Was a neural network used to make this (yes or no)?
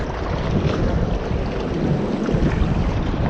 no